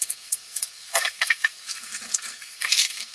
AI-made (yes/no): yes